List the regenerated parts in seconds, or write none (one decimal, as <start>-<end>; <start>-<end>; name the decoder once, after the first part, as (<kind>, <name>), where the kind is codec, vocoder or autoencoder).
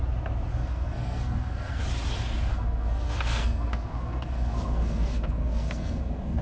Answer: 0.5-1.8 (codec, SNAC); 2.5-6.4